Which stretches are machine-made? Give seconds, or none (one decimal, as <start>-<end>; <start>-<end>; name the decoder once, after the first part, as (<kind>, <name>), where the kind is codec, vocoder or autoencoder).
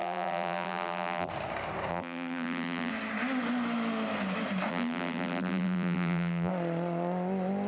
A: 0.0-1.3 (vocoder, BigVGAN v2); 1.9-2.9; 4.7-6.5